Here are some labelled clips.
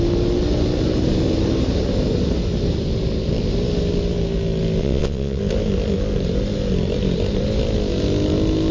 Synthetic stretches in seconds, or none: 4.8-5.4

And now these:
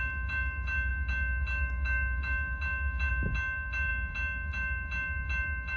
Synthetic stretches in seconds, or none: none

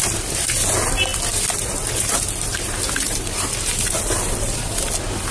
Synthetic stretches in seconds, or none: none

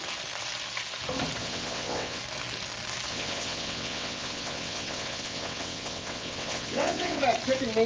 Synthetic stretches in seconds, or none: 1.4-2.2; 3.1-7.2

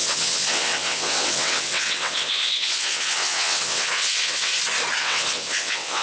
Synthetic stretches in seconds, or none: 0.0-4.5; 5.0-6.0

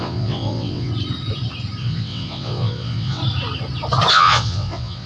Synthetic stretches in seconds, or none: 0.0-0.9; 1.8-3.2; 4.1-5.1

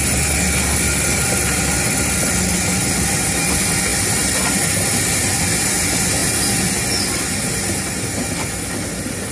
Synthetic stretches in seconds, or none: none

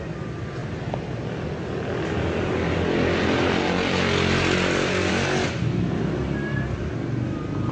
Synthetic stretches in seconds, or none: none